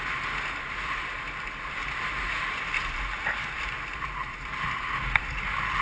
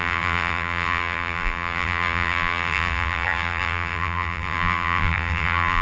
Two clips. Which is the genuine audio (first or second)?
first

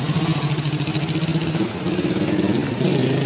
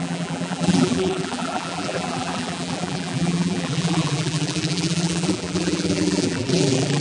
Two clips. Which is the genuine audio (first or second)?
first